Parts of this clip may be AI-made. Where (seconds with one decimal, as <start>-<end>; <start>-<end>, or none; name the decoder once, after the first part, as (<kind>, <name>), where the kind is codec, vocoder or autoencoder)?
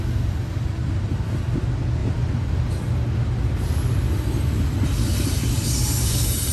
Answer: none